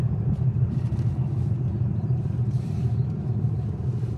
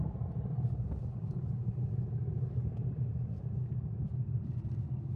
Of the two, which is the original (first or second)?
second